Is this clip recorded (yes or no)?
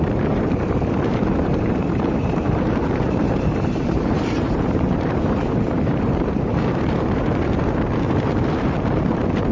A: no